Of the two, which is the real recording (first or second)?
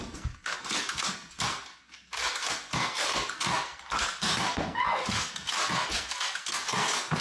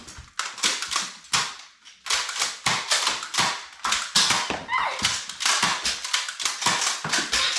second